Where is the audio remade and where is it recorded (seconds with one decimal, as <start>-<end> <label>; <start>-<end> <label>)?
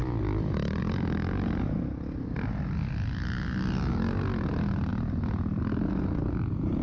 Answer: 0.0-6.8 recorded